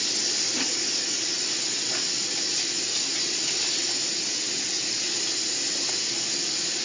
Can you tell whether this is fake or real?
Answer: real